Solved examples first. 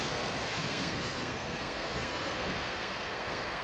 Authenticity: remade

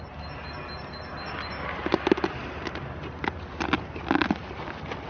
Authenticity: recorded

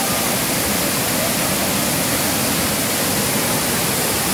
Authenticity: recorded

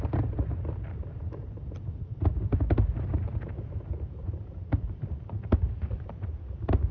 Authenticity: remade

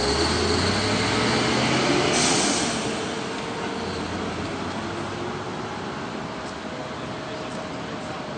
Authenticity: recorded